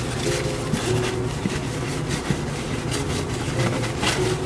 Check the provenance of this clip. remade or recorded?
recorded